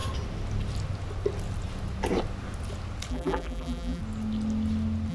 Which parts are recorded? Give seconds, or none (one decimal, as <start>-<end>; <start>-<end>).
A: 0.0-3.1; 4.0-5.1